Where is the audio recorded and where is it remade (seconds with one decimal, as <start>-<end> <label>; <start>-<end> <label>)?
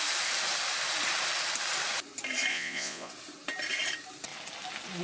0.0-2.5 recorded; 2.5-3.1 remade; 3.1-5.0 recorded